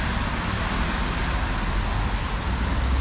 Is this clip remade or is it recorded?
recorded